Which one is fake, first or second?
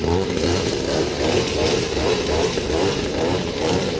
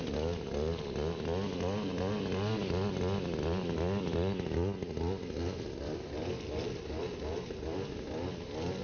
first